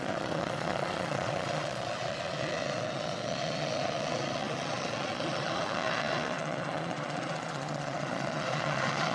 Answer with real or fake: fake